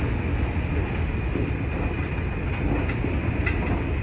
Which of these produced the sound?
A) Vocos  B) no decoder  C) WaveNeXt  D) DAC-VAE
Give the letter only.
B